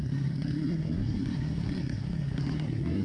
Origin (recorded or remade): remade